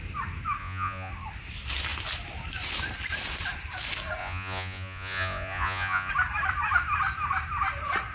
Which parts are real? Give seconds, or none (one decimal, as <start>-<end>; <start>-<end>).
0.0-0.6; 1.1-4.2; 6.1-8.1